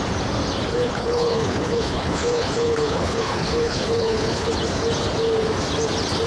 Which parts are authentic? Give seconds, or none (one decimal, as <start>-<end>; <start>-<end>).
0.0-0.7; 4.5-6.3